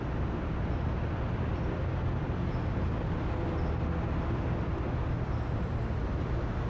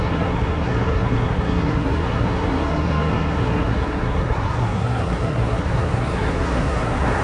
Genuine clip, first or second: first